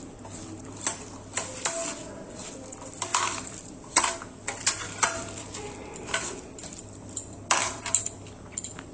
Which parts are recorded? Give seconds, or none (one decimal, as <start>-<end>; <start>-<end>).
0.0-3.1; 6.0-7.6; 8.2-8.9